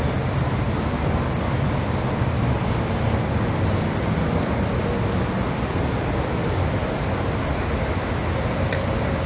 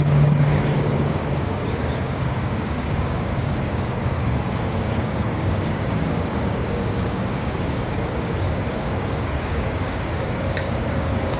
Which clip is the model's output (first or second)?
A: second